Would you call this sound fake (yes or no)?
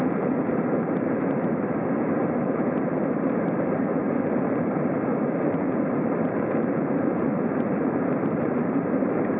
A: yes